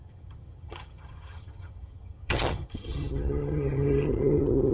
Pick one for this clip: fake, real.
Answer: fake